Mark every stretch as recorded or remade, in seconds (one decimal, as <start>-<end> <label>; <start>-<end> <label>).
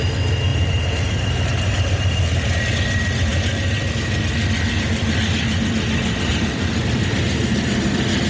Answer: 0.0-0.5 recorded; 0.5-2.7 remade; 2.7-3.3 recorded; 3.3-4.2 remade; 4.2-6.3 recorded; 6.3-7.7 remade; 7.7-8.3 recorded